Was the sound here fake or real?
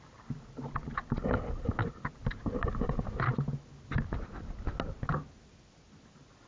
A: real